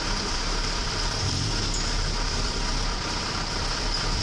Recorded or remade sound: remade